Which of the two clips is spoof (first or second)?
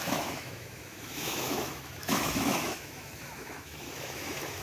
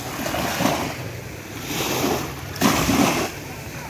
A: first